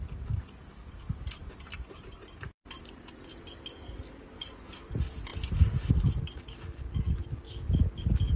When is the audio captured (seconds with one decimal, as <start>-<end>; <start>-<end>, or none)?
0.0-8.4